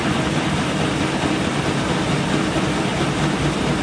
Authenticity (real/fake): real